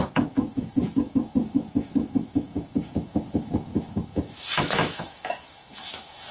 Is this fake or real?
fake